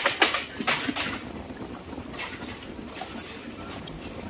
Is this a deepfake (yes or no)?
yes